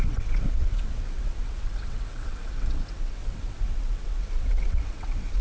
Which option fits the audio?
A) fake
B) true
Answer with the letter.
A